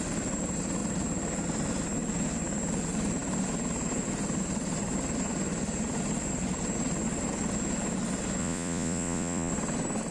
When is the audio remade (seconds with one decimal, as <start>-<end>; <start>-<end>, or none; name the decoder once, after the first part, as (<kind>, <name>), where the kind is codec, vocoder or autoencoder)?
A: 8.4-9.5 (vocoder, Vocos)